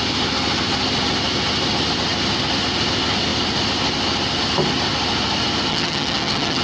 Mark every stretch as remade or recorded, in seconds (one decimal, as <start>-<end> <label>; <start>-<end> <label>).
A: 0.0-5.7 recorded; 5.7-6.6 remade